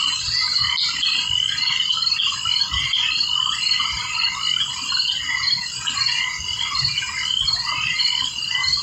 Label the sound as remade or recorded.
recorded